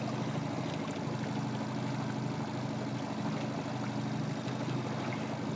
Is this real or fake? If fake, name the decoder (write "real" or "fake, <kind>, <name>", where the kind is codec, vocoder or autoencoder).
real